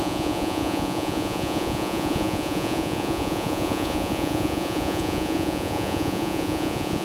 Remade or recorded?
remade